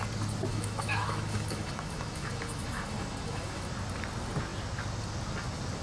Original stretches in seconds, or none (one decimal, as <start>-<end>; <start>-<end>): 0.0-0.5; 3.7-5.8